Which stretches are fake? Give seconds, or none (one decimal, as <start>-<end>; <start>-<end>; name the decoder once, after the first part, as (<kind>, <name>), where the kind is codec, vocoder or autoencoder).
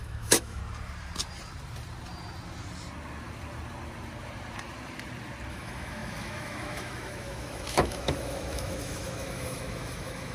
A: 0.0-0.6 (autoencoder, DAC-VAE); 5.5-10.3